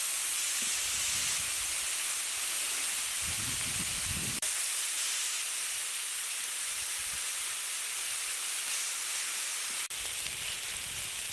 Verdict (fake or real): real